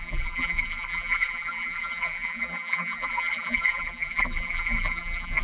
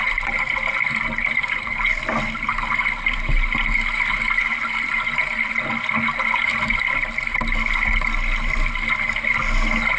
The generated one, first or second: first